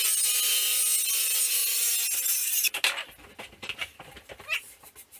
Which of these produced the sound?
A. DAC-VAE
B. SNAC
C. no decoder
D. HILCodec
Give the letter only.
C